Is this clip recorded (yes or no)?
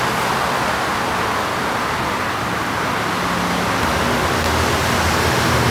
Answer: yes